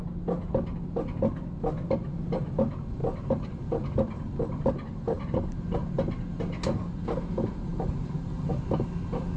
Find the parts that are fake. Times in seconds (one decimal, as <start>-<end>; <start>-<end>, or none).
3.0-5.5